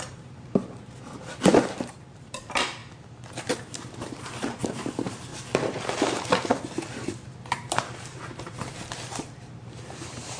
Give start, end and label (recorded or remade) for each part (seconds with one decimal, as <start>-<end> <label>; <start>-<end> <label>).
0.0-2.8 remade; 2.8-3.4 recorded; 3.4-5.3 remade; 5.3-5.8 recorded; 5.8-6.5 remade; 6.5-7.4 recorded; 7.4-10.4 remade